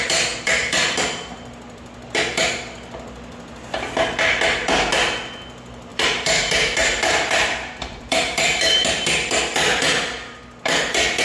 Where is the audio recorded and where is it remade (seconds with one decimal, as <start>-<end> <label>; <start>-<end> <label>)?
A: 0.0-5.9 recorded; 5.9-8.9 remade; 8.9-11.2 recorded